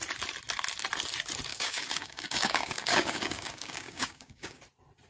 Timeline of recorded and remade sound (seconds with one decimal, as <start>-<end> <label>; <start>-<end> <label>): 0.0-1.5 recorded; 1.5-4.6 remade; 4.6-5.1 recorded